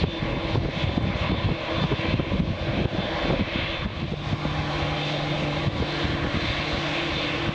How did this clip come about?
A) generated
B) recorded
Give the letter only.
B